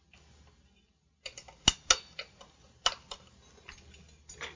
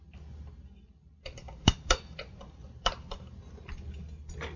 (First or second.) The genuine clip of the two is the first